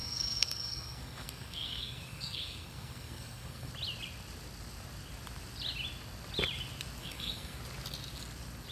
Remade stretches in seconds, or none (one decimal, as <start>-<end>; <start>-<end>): 0.0-3.7; 7.0-7.6